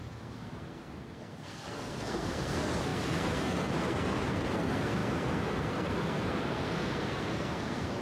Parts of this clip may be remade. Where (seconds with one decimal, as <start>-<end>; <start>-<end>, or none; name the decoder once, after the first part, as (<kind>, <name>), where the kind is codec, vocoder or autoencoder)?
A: 0.0-8.0 (codec, SNAC)